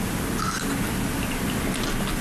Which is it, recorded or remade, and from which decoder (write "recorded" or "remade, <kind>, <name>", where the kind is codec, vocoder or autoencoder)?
recorded